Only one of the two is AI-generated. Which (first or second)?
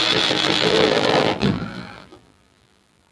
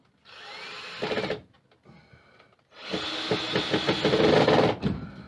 first